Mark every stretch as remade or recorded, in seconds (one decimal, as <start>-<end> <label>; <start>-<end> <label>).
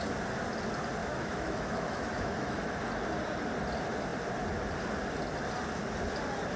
0.0-1.0 recorded; 1.0-2.8 remade; 2.8-6.6 recorded